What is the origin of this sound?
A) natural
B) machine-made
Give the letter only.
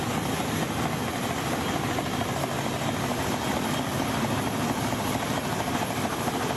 A